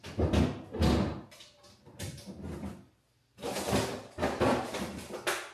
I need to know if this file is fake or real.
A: real